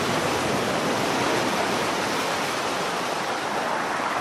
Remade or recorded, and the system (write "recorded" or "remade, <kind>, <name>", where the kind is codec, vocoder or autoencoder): remade, vocoder, BigVGAN v2